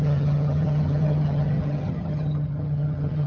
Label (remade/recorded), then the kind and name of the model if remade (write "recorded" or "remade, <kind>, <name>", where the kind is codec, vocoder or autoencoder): remade, vocoder, HiFi-GAN